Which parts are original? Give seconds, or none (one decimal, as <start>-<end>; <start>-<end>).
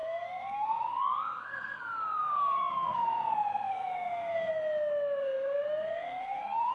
1.8-2.2; 4.5-5.2